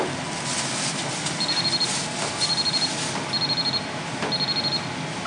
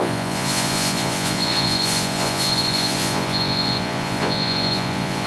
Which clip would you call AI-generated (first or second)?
second